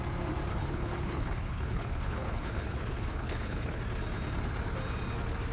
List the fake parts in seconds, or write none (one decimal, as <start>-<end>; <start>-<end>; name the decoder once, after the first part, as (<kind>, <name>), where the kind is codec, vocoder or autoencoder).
0.5-3.8 (codec, HILCodec)

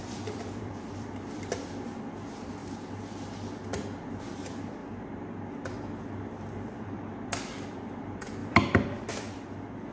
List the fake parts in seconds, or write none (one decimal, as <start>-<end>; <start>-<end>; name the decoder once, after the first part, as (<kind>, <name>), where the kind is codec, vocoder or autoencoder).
0.0-2.6 (vocoder, BigVGAN v2); 4.2-4.8; 6.5-9.9

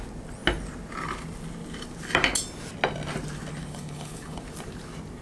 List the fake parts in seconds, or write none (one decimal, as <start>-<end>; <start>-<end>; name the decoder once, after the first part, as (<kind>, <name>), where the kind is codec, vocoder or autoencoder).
3.6-4.4 (codec, HILCodec)

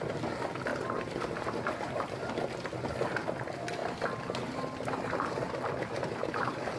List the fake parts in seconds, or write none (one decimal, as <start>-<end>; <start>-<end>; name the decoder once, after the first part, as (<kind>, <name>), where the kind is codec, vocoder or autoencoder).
0.7-2.3 (vocoder, BigVGAN v2); 6.2-6.8

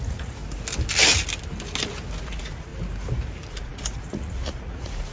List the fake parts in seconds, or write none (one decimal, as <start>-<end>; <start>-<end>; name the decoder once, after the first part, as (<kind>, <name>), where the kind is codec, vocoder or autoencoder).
0.0-0.4 (vocoder, Vocos); 2.2-2.7; 3.5-5.1

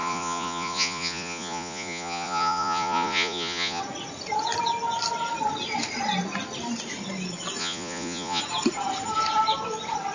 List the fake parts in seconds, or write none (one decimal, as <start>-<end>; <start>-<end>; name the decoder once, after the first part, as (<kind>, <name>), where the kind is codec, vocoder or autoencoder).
0.0-3.8 (vocoder, Vocos); 7.6-8.4

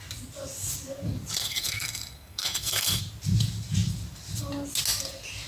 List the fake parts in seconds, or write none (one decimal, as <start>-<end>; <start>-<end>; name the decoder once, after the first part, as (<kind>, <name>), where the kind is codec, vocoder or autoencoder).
1.4-3.0 (codec, SNAC)

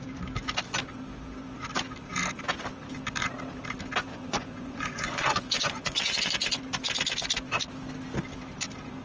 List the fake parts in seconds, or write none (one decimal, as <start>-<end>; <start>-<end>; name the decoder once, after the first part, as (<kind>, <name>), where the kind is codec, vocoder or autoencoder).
4.1-6.6 (vocoder, Vocos)